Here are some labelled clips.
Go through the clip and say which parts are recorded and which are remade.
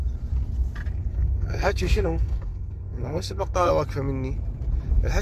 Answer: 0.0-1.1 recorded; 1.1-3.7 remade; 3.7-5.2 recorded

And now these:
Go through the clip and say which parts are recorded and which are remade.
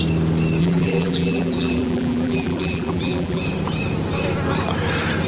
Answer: 0.0-0.6 recorded; 0.6-3.4 remade; 3.4-5.3 recorded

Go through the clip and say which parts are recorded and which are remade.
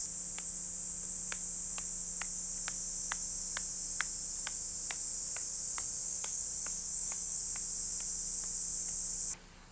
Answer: 0.0-6.0 recorded; 6.0-7.4 remade; 7.4-9.7 recorded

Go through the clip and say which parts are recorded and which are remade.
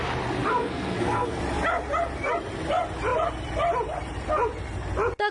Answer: 0.0-0.5 recorded; 0.5-1.4 remade; 1.4-5.3 recorded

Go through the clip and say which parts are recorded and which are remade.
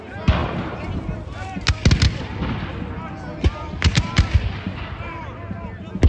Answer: 0.0-6.1 recorded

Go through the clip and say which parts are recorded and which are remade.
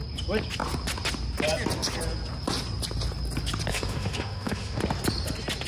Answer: 0.0-3.7 recorded; 3.7-4.8 remade; 4.8-5.7 recorded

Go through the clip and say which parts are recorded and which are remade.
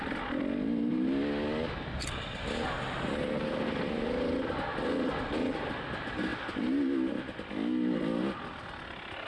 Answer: 0.0-9.3 recorded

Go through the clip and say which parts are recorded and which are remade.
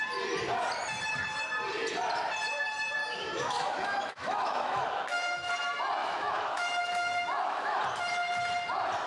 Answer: 0.0-3.0 recorded; 3.0-5.5 remade; 5.5-6.0 recorded; 6.0-7.8 remade; 7.8-9.1 recorded